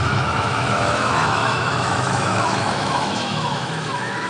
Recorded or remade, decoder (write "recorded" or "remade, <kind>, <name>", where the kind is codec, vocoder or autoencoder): remade, autoencoder, DAC-VAE